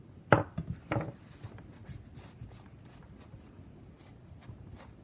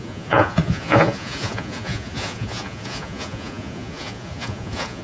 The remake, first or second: second